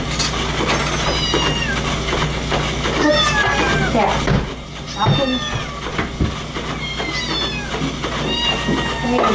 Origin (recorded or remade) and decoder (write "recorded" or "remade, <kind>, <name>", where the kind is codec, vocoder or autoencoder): recorded